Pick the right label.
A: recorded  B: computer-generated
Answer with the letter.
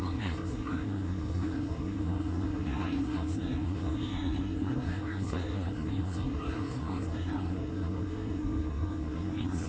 B